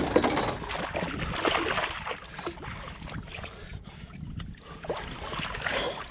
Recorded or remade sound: recorded